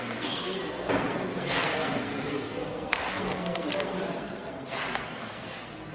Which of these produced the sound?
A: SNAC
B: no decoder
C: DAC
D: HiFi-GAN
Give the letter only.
A